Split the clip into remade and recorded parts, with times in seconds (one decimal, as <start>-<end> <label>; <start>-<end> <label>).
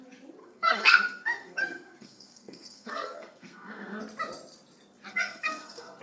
0.0-0.4 recorded; 0.4-4.0 remade; 4.0-5.1 recorded; 5.1-6.0 remade